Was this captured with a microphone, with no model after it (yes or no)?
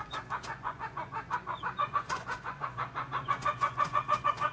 no